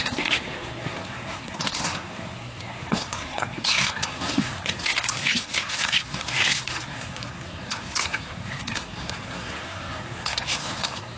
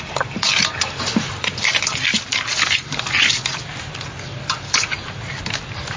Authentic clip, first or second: second